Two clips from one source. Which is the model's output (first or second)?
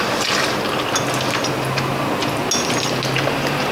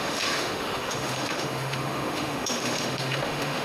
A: second